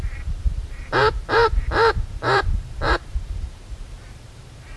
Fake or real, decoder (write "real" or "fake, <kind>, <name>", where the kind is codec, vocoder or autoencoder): fake, vocoder, BigVGAN v2